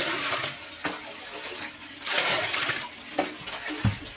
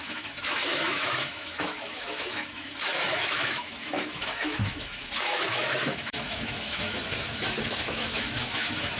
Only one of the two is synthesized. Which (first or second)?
second